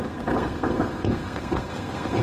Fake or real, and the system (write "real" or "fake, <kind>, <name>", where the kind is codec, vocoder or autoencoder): fake, codec, SNAC